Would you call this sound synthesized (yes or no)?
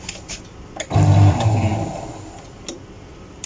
no